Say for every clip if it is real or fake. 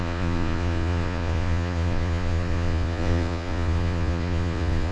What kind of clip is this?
fake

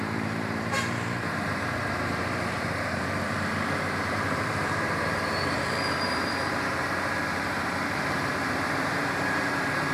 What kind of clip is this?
fake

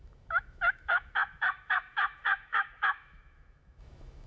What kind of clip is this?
fake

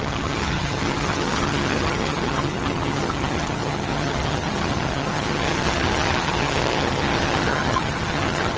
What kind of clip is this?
fake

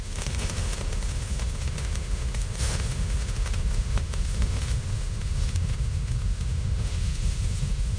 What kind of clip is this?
fake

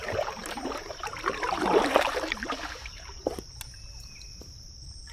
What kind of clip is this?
fake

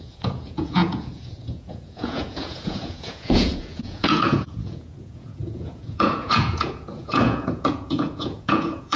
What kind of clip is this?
fake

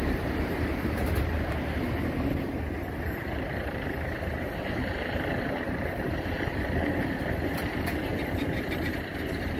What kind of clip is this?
fake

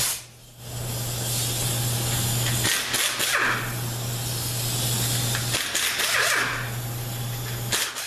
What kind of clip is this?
real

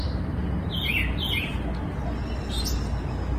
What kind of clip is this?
real